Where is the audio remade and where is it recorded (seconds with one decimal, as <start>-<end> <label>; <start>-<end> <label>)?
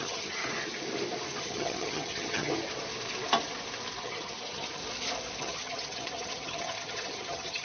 0.0-0.4 remade; 0.4-1.4 recorded; 1.4-2.5 remade; 2.5-4.0 recorded; 4.0-4.8 remade; 4.8-5.4 recorded; 5.4-7.6 remade